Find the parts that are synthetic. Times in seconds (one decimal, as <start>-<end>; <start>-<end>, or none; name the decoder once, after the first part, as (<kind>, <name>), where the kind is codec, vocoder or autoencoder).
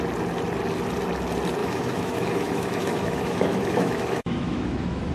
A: 1.6-5.1 (autoencoder, DAC-VAE)